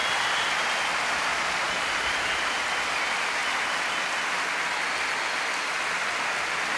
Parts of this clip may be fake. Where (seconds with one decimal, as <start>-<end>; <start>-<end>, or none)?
1.3-2.2